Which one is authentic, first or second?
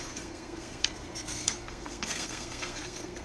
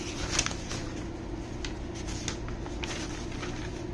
second